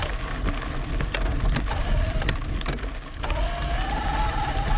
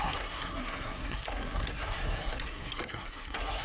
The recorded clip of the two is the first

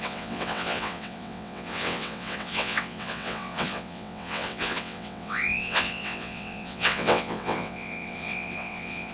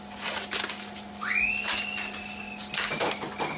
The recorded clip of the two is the second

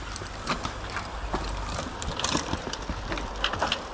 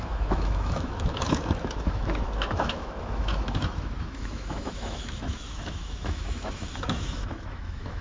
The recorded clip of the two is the first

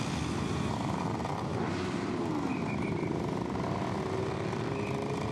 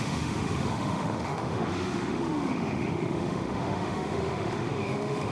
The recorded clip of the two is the first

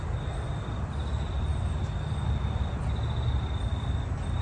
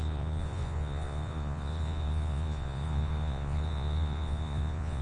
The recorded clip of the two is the first